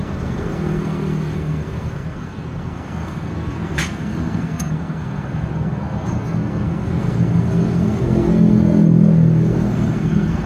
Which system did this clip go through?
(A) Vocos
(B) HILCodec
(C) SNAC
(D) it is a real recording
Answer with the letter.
C